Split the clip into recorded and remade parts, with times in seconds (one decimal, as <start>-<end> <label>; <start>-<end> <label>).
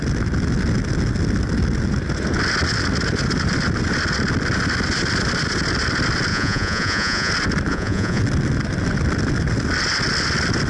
0.0-6.3 recorded; 6.3-7.3 remade; 7.3-7.7 recorded; 7.7-8.2 remade; 8.2-10.7 recorded